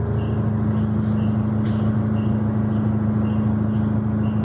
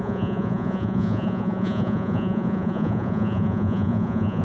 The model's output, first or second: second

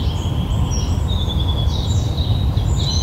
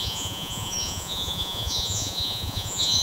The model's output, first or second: second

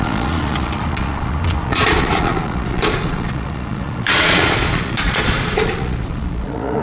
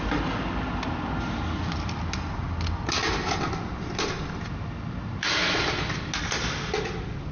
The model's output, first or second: first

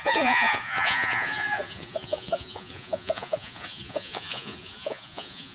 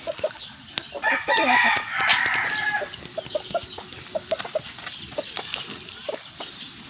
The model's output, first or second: first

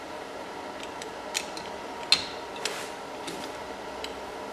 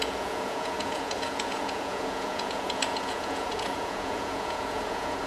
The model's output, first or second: second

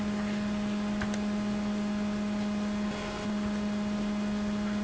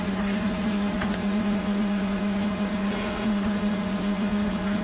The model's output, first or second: second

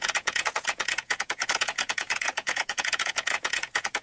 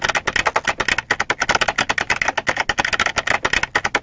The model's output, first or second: first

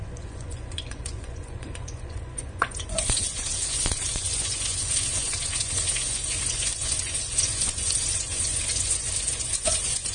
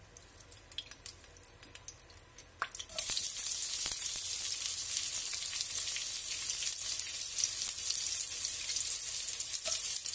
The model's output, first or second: first